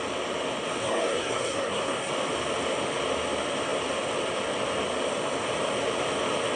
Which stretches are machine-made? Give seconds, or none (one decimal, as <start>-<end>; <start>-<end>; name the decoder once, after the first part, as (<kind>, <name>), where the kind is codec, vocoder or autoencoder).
0.8-2.1 (codec, SNAC)